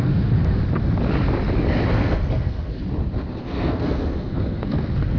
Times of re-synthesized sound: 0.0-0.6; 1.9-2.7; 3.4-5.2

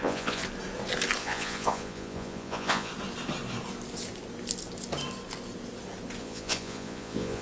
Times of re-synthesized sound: 0.0-0.4; 1.2-2.9; 6.2-7.4

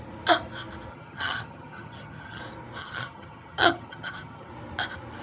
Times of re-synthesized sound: 0.9-2.4; 2.8-4.5

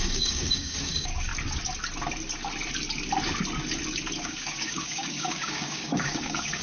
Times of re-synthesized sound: 0.0-1.3; 4.2-6.6

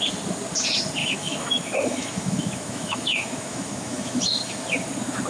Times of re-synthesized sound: 1.0-4.2